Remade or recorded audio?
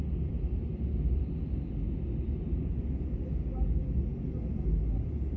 recorded